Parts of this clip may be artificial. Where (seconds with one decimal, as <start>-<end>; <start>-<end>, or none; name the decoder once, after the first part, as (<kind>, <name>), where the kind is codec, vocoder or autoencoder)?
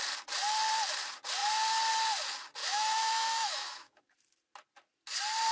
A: 2.6-4.0 (autoencoder, DAC-VAE)